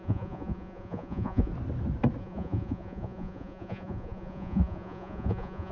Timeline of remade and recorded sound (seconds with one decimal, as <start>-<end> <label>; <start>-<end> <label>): 0.0-1.5 remade; 1.5-2.2 recorded; 2.2-5.7 remade